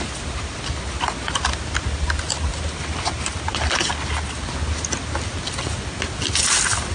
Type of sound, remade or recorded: recorded